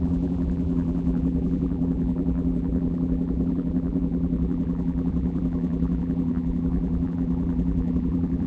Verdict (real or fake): fake